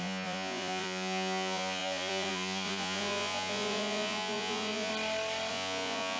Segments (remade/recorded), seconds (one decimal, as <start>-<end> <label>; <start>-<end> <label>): 0.0-4.9 remade; 4.9-5.5 recorded; 5.5-6.2 remade